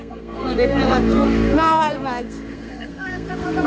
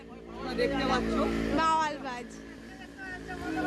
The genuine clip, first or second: second